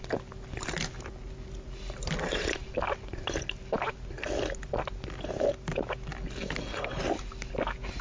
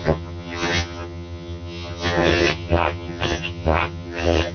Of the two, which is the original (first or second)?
first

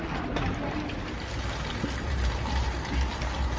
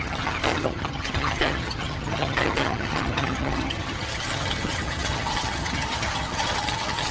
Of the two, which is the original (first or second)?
first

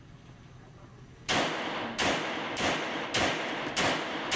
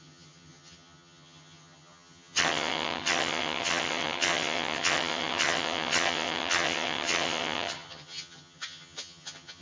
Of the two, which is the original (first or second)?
first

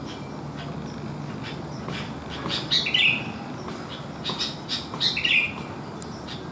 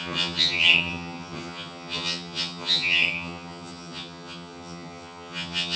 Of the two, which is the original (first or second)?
first